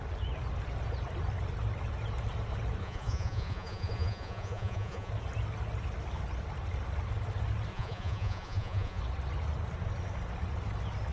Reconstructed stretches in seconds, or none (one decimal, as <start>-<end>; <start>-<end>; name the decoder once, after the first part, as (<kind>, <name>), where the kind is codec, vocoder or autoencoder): 2.8-5.1 (vocoder, Vocos); 7.7-9.0